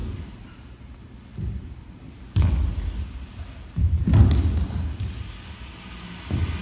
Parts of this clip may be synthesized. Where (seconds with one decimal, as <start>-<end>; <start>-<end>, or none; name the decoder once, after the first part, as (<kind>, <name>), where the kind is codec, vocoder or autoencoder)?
none